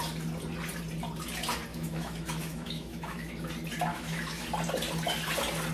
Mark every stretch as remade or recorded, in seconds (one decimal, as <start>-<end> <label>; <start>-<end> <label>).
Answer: 0.0-1.7 recorded; 1.7-3.5 remade; 3.5-3.9 recorded; 3.9-4.5 remade; 4.5-5.7 recorded

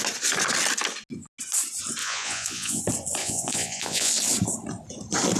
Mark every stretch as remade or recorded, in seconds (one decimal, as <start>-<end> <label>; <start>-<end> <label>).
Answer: 0.0-2.0 recorded; 2.0-2.8 remade; 2.8-3.2 recorded; 3.2-4.1 remade; 4.1-5.4 recorded

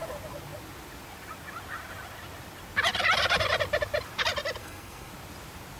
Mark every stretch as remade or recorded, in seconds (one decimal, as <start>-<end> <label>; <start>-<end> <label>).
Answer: 0.0-4.6 recorded; 4.6-5.1 remade; 5.1-5.8 recorded

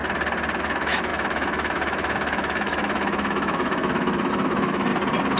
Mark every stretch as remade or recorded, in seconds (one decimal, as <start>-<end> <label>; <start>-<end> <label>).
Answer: 0.0-0.6 recorded; 0.6-4.9 remade; 4.9-5.4 recorded

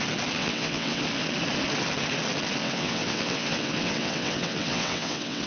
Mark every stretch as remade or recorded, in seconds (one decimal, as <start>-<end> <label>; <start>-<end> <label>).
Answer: 0.0-0.4 recorded; 0.4-1.0 remade; 1.0-2.6 recorded; 2.6-5.5 remade

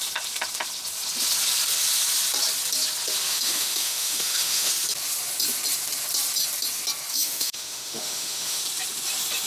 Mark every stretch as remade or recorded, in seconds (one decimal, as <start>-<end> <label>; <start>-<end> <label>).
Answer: 0.0-3.3 recorded; 3.3-4.7 remade; 4.7-7.1 recorded; 7.1-8.6 remade; 8.6-9.5 recorded